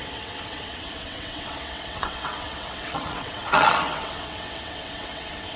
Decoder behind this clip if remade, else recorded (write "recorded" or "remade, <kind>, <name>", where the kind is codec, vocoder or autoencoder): remade, vocoder, WaveNeXt